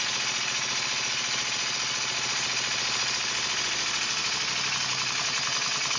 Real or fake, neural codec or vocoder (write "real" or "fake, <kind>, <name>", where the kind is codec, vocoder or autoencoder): real